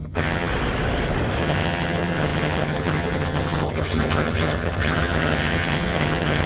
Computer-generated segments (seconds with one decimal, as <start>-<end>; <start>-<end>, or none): 0.0-0.5; 1.4-6.5